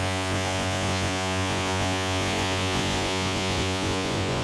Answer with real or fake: fake